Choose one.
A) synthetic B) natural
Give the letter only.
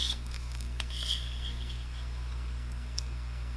A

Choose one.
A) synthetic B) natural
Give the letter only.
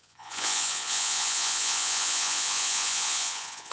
A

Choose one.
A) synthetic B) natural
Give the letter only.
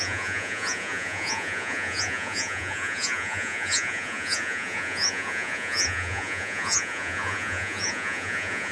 A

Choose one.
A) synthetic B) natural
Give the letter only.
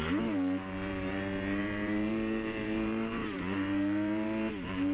A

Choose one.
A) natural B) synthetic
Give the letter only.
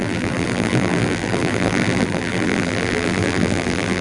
B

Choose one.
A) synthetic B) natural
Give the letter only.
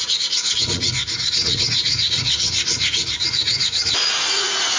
A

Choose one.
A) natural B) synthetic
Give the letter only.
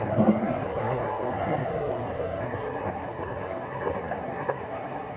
B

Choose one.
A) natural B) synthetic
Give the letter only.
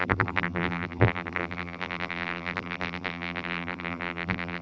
B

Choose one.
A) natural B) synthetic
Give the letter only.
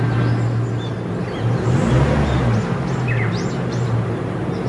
A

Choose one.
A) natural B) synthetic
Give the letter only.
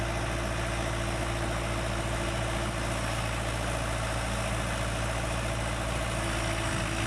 A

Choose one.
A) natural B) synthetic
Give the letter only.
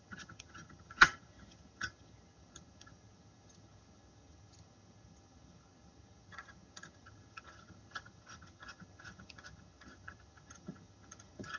B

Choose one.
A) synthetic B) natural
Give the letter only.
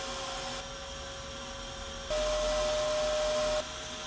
B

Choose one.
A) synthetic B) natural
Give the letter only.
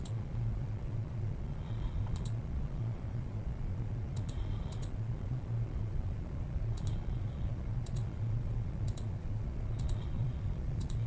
A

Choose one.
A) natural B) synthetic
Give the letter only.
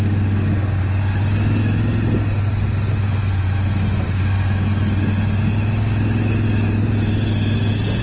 A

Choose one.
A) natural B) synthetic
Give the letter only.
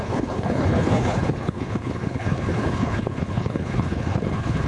B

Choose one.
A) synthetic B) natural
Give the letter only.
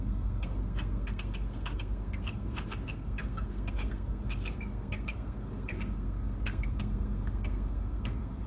A